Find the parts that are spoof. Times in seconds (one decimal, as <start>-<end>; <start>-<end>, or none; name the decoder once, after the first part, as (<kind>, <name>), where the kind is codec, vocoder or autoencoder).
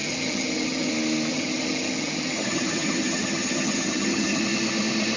0.0-0.9 (vocoder, HiFi-GAN); 1.3-4.4